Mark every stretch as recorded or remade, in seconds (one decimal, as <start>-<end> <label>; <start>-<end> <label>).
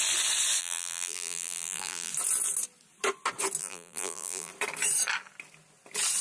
0.0-0.6 recorded; 0.6-2.1 remade; 2.1-3.6 recorded; 3.6-4.5 remade; 4.5-6.2 recorded